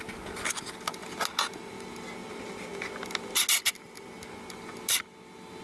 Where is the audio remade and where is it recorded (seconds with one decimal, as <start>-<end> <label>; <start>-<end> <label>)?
0.0-5.6 recorded